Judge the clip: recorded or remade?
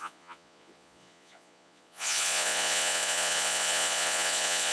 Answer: remade